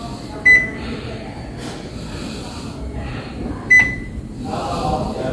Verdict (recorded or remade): recorded